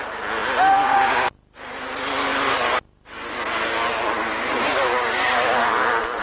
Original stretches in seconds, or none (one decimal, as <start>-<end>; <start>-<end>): 0.0-6.2